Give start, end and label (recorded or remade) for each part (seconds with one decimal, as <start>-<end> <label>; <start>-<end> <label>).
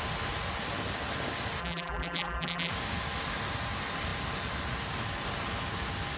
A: 0.0-1.6 recorded; 1.6-2.7 remade; 2.7-6.2 recorded